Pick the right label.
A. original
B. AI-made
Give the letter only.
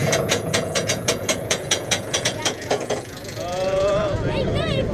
B